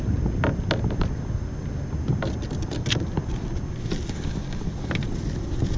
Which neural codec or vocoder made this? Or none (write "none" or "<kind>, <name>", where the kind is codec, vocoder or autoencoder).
none